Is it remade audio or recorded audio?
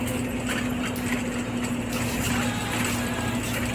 recorded